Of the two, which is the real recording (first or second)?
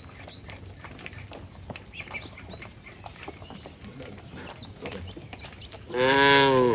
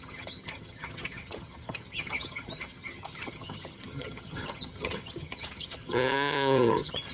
first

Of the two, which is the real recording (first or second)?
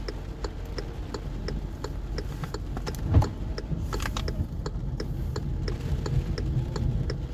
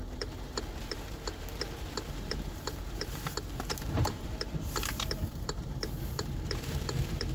first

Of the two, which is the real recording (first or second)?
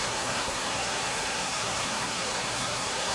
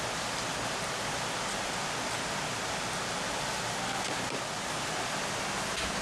second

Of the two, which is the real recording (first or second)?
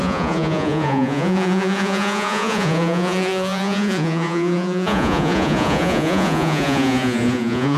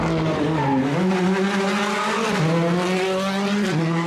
second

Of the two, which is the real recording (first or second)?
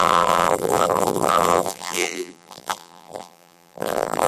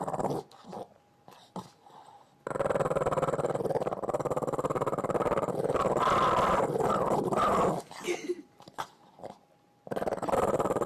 second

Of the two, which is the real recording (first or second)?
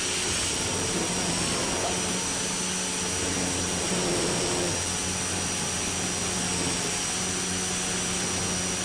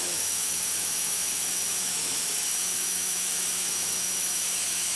first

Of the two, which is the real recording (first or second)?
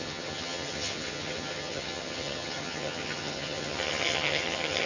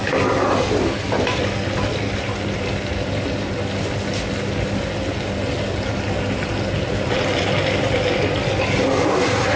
second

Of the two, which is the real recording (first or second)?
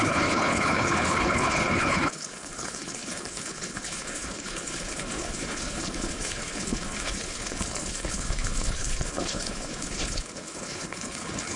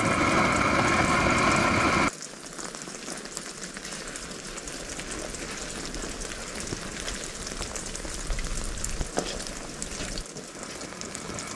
second